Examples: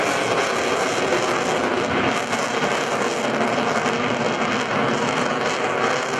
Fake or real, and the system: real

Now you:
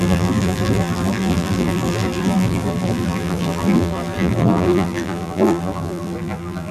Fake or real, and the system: fake, vocoder, BigVGAN v2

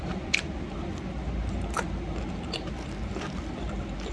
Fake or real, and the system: real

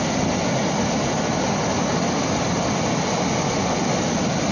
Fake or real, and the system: real